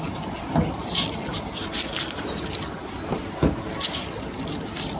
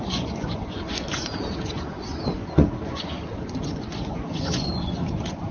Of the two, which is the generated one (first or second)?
second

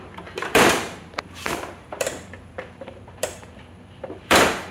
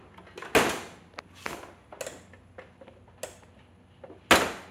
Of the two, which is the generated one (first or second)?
first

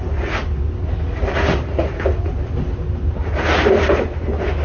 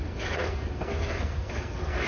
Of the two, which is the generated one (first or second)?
second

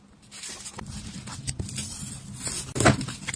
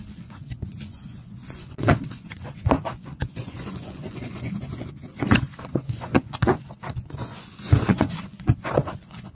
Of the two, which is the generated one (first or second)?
second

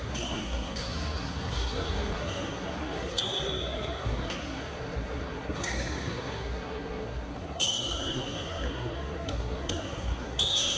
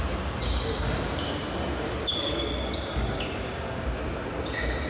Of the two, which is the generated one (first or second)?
first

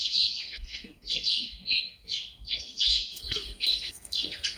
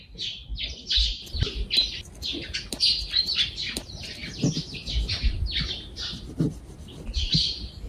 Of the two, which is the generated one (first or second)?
first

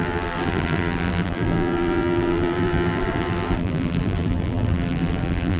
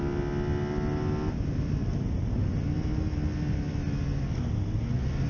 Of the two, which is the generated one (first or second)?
first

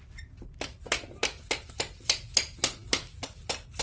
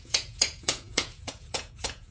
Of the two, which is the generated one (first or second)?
second